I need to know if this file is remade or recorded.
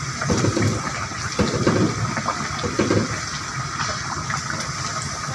recorded